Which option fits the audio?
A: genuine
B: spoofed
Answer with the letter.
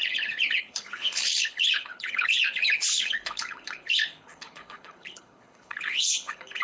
B